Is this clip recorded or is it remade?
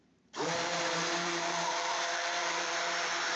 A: remade